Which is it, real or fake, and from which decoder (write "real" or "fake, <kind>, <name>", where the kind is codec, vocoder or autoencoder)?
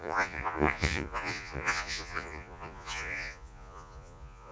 fake, vocoder, Vocos